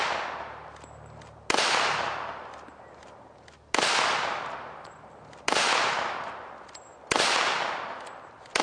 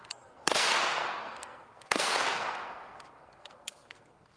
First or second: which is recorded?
first